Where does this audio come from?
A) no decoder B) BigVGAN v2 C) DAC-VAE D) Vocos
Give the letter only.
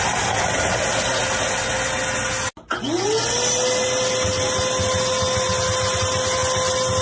A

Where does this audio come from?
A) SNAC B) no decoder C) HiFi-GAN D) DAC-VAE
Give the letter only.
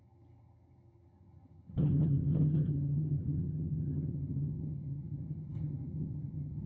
C